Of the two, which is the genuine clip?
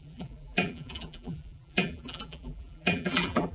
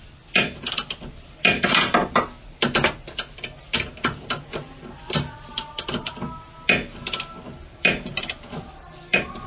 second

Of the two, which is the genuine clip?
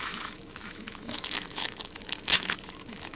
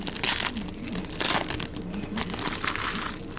second